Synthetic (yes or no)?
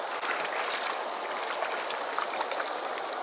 no